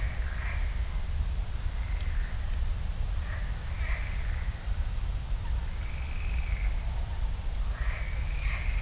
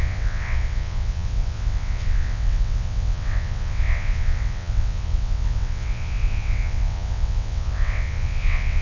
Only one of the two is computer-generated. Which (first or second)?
second